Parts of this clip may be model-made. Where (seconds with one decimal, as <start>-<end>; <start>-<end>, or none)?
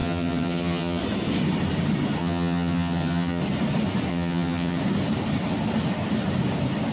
0.0-1.0; 2.2-3.4; 4.1-4.8